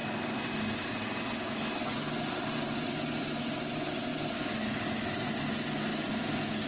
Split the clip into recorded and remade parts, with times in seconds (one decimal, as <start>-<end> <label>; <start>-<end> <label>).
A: 0.0-3.2 remade; 3.2-4.1 recorded; 4.1-5.3 remade; 5.3-5.9 recorded; 5.9-6.7 remade